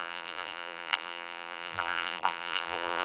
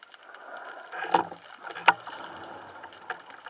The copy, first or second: first